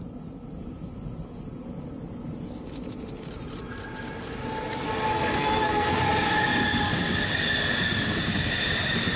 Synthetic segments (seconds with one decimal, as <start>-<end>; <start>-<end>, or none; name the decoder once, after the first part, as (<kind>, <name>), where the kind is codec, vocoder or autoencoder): 5.1-6.0 (codec, SNAC)